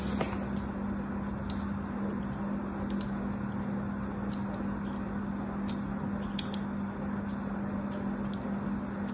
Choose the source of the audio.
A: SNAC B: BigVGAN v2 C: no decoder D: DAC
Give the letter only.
C